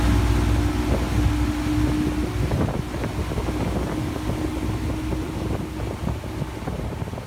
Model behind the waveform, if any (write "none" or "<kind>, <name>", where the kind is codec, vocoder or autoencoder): none